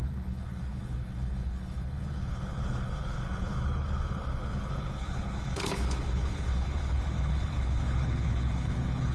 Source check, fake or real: fake